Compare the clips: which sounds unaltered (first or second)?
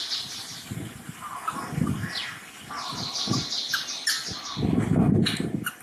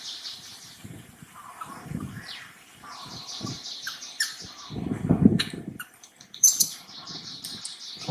first